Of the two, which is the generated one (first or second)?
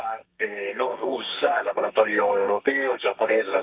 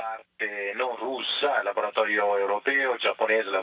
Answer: first